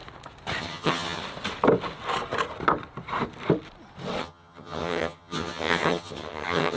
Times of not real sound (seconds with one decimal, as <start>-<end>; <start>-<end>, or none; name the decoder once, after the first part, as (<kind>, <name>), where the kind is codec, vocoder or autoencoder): 0.6-1.2 (vocoder, HiFi-GAN); 4.2-6.8